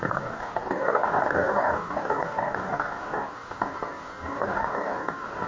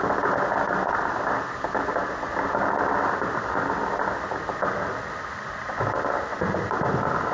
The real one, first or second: second